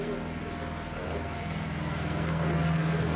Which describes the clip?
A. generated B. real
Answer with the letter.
A